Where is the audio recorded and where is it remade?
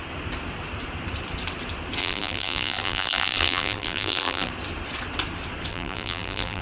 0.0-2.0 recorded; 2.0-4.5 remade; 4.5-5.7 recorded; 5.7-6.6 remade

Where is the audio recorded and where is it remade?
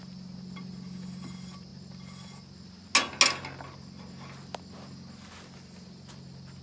0.0-6.6 recorded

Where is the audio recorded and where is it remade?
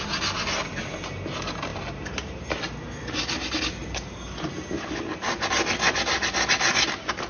0.0-1.7 recorded; 1.7-2.6 remade; 2.6-3.8 recorded; 3.8-5.1 remade; 5.1-7.3 recorded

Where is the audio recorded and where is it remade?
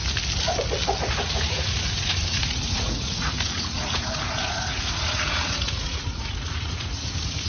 0.0-1.0 recorded; 1.0-7.5 remade